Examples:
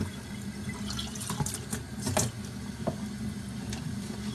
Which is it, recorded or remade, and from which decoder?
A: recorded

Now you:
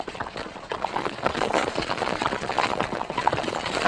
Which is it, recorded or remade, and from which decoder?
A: remade, vocoder, Vocos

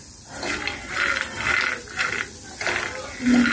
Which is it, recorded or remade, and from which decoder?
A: recorded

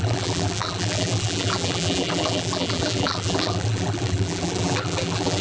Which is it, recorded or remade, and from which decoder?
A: remade, vocoder, BigVGAN v2